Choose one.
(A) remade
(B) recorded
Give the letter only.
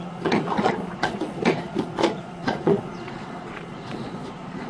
A